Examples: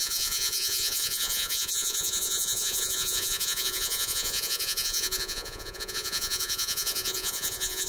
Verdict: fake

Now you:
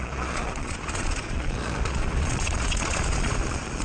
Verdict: fake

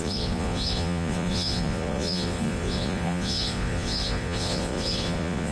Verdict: fake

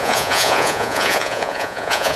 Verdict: fake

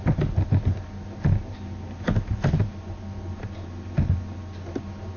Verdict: real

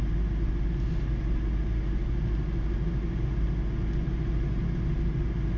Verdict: real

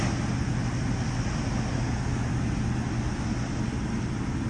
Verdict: real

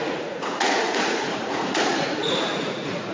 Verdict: fake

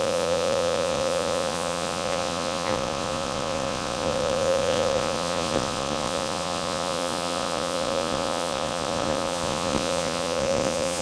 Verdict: fake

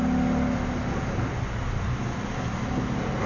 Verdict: real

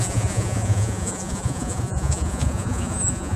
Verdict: fake